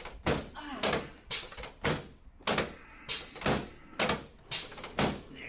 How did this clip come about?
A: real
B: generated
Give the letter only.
A